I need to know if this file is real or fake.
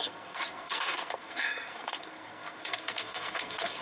fake